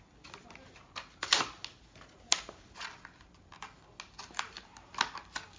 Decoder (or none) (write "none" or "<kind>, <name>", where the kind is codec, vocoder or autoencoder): none